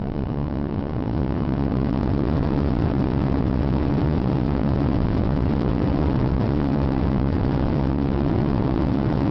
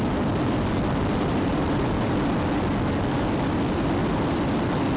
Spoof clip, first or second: first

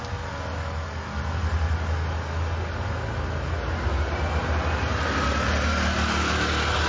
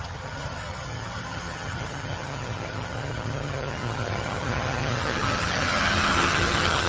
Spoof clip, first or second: second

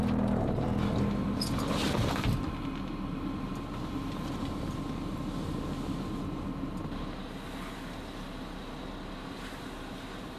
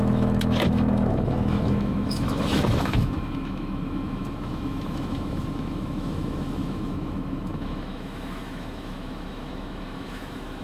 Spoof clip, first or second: second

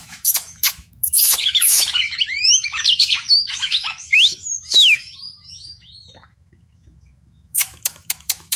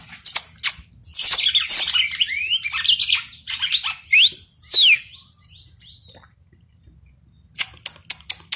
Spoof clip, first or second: first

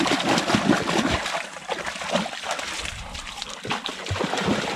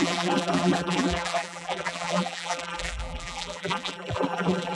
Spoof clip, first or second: second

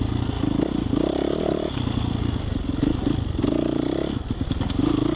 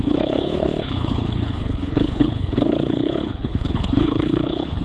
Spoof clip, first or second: second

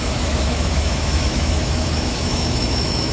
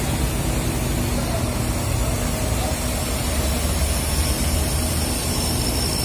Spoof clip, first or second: first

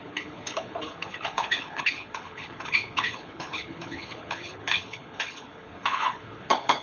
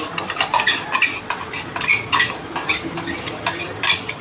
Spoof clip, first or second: first